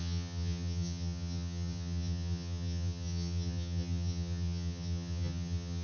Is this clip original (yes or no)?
no